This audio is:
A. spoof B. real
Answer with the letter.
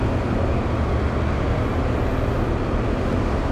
B